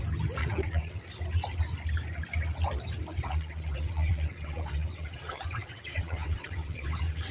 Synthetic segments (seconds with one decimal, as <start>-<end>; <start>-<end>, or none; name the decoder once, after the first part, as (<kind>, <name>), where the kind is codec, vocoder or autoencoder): 0.4-1.0 (vocoder, WaveNeXt); 3.1-7.3